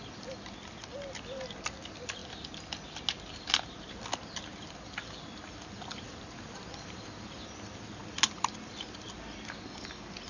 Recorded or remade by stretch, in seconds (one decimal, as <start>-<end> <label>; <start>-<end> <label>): 0.0-10.3 recorded